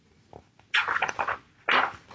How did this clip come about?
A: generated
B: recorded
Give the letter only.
B